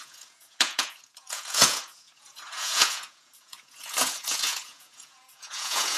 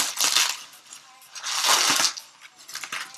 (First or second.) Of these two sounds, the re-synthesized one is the first